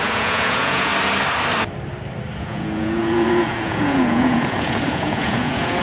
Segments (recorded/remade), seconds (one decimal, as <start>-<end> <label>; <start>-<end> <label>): 0.0-0.9 remade; 0.9-2.4 recorded; 2.4-5.8 remade